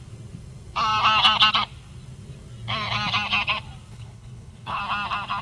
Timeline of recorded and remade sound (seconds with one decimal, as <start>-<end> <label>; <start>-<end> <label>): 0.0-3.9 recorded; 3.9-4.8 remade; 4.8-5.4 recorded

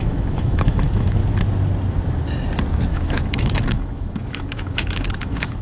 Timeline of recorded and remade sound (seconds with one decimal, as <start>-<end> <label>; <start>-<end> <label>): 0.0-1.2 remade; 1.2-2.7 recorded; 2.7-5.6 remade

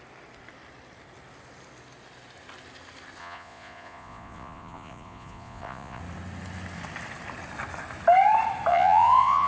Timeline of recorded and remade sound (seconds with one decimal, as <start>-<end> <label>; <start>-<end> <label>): 0.0-3.2 recorded; 3.2-6.0 remade; 6.0-8.7 recorded; 8.7-9.5 remade

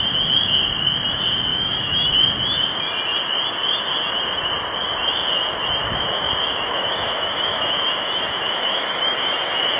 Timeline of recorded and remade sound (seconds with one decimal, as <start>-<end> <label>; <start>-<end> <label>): 0.0-1.5 recorded; 1.5-2.1 remade; 2.1-5.8 recorded; 5.8-6.3 remade; 6.3-6.7 recorded; 6.7-9.4 remade; 9.4-9.8 recorded

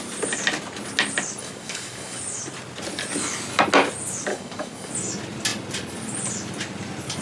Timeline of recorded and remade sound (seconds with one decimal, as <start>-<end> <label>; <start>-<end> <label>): 0.0-1.4 recorded; 1.4-2.2 remade; 2.2-4.3 recorded; 4.3-4.9 remade; 4.9-7.2 recorded

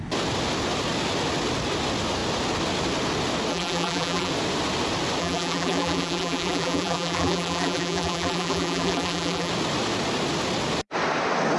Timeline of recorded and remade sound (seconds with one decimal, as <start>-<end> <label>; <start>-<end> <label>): 0.0-3.5 recorded; 3.5-4.3 remade; 4.3-5.2 recorded; 5.2-9.5 remade; 9.5-11.6 recorded